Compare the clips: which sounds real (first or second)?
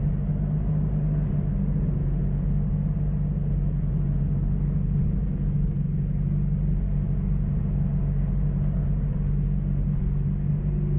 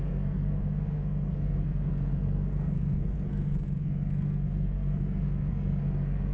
first